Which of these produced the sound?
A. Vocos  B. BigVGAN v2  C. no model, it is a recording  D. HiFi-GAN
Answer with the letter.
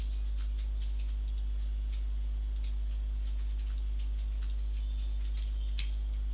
C